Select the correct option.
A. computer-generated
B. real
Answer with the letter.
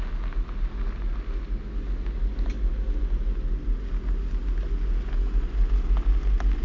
B